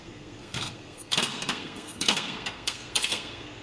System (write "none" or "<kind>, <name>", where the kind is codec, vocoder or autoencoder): codec, SNAC